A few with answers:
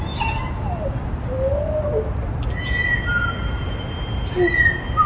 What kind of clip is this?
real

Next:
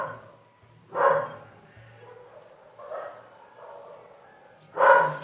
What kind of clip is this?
real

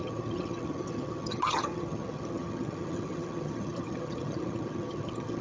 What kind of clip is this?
fake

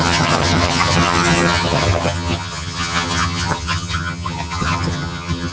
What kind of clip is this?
fake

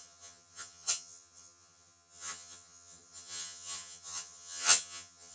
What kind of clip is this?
fake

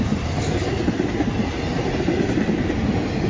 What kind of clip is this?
real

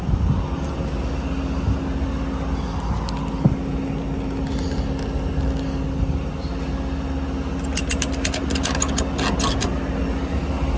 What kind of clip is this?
real